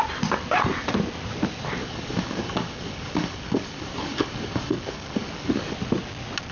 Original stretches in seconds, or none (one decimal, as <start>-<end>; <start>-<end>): 0.0-1.8; 5.7-6.5